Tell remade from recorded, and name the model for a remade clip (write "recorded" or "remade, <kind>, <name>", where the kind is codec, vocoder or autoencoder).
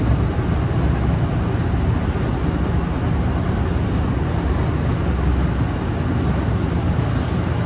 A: recorded